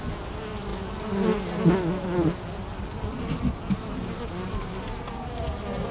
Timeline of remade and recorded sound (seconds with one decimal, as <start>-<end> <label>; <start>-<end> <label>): 0.0-5.9 recorded